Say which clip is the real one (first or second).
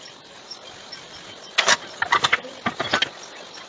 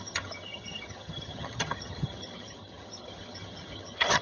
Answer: first